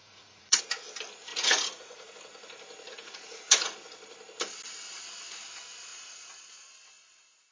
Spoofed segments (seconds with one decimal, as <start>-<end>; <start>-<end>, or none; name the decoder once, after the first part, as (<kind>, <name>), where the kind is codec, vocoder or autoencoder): 0.0-0.6 (vocoder, Vocos); 1.3-2.1; 2.9-3.9; 5.9-6.7